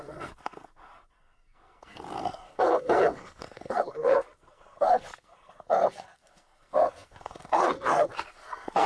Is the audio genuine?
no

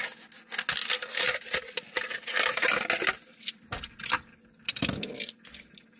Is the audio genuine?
yes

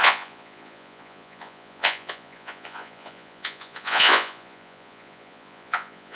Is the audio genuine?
no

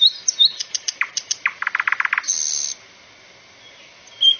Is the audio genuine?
yes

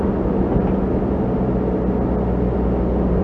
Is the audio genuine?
yes